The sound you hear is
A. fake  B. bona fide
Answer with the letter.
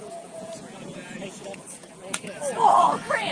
A